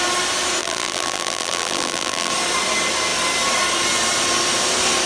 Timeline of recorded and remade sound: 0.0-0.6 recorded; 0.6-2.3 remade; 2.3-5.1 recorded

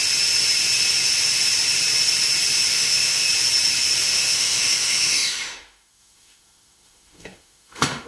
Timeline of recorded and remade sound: 0.0-2.7 recorded; 2.7-3.2 remade; 3.2-4.0 recorded; 4.0-8.1 remade

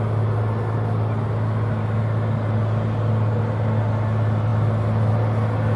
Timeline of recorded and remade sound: 0.0-5.8 recorded

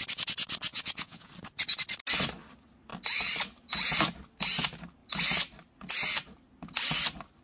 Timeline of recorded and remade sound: 0.0-0.7 recorded; 0.7-1.3 remade; 1.3-7.4 recorded